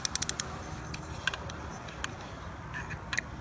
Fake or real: real